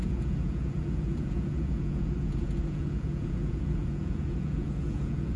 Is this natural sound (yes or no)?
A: no